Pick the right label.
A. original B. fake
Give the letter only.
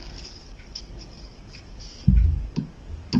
B